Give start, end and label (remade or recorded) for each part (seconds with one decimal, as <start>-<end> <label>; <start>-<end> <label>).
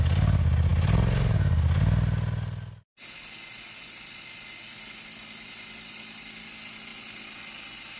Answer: 0.0-8.0 recorded